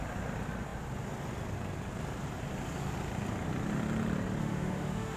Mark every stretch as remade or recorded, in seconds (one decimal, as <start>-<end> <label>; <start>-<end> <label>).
0.0-4.4 recorded; 4.4-5.2 remade